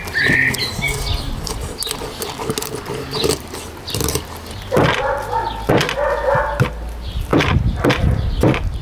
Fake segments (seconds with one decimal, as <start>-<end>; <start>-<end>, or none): none